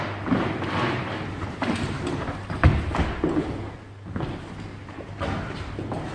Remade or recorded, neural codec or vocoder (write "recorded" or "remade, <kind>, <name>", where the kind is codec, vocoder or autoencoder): recorded